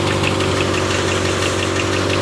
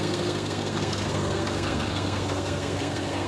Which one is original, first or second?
first